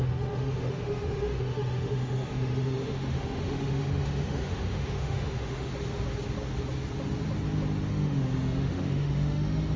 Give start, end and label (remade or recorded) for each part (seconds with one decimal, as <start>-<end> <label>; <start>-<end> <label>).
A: 0.0-5.7 remade; 5.7-7.9 recorded; 7.9-9.8 remade